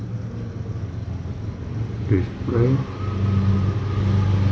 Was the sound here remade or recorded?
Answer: recorded